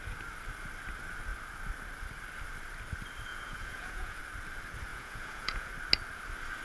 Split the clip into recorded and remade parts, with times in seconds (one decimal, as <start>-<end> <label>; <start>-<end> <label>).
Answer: 0.0-3.3 recorded; 3.3-4.2 remade; 4.2-4.9 recorded; 4.9-5.7 remade; 5.7-6.6 recorded